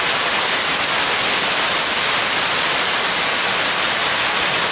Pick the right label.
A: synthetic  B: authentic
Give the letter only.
B